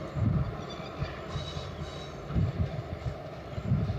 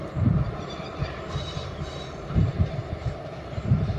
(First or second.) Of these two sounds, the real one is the first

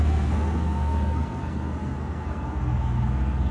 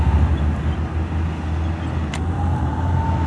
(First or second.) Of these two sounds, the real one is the second